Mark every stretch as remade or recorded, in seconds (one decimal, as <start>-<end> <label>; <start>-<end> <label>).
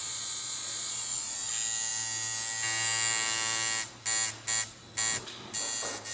0.0-1.5 remade; 1.5-6.1 recorded